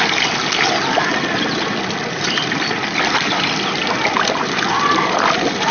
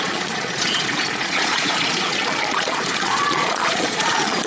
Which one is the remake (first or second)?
second